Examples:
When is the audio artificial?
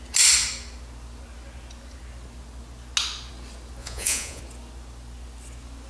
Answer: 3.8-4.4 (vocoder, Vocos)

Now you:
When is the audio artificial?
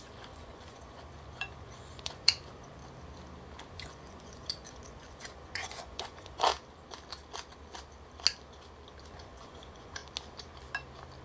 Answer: 0.0-2.8 (vocoder, Vocos); 3.7-6.5; 9.1-10.0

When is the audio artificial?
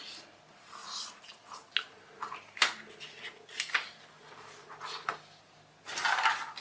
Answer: none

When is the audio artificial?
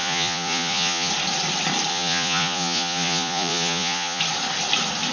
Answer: 0.0-1.1 (vocoder, Vocos); 1.9-4.2